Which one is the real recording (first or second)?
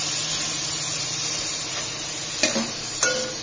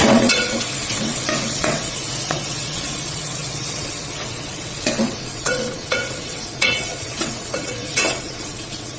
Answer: first